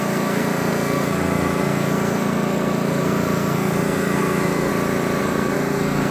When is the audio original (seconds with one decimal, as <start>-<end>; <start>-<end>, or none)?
4.7-5.2